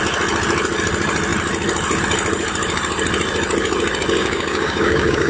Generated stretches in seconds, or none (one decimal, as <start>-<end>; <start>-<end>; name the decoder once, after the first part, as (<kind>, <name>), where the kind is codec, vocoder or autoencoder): 4.2-5.3 (codec, DAC)

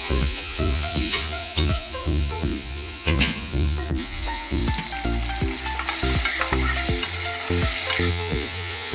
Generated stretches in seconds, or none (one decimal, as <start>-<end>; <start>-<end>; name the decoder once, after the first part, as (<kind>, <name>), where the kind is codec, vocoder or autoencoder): 0.0-4.6 (vocoder, Vocos); 8.1-8.9

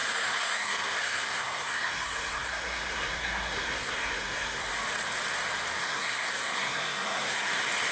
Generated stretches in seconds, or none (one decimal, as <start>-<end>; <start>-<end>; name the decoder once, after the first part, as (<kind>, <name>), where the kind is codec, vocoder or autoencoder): 0.0-4.7 (codec, SNAC); 5.8-7.5

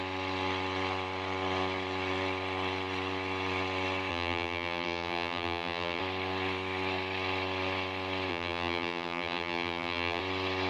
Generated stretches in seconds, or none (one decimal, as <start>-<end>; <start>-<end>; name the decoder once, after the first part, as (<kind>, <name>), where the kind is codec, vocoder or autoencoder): 4.1-6.0 (vocoder, BigVGAN v2); 8.3-10.2

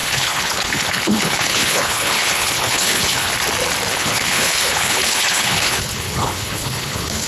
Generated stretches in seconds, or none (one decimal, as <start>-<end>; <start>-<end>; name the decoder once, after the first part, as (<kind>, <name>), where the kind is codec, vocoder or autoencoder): 0.0-3.3 (codec, HILCodec); 3.9-7.3

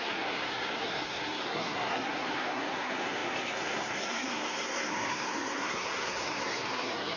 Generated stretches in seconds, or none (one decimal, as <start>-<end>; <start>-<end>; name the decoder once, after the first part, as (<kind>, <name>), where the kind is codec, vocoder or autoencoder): 0.0-7.2 (codec, SNAC)

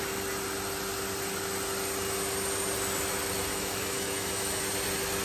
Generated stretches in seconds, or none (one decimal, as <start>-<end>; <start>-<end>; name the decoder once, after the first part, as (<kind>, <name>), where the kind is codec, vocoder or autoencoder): 3.5-4.6 (autoencoder, DAC-VAE)

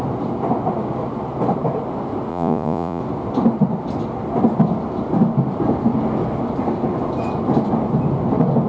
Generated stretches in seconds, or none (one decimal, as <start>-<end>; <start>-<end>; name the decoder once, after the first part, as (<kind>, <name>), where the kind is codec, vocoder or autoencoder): 2.3-3.0 (vocoder, Vocos)